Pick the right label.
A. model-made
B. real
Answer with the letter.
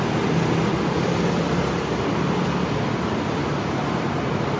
B